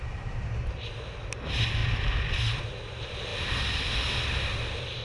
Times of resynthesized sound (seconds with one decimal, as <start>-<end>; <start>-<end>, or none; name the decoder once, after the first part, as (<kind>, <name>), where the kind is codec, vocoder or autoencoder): none